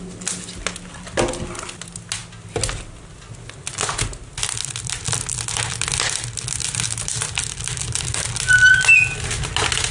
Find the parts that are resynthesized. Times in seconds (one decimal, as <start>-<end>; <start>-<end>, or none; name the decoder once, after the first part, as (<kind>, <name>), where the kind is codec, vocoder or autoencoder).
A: none